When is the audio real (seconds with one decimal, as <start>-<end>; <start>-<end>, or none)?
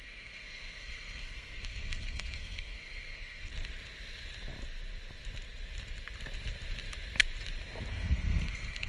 3.5-7.9